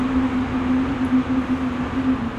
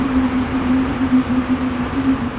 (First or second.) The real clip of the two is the first